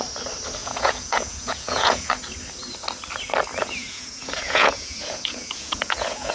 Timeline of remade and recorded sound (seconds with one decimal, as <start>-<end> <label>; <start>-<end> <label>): 0.0-0.6 recorded; 0.6-2.1 remade; 2.1-3.8 recorded; 3.8-6.3 remade